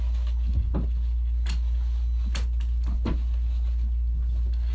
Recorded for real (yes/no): yes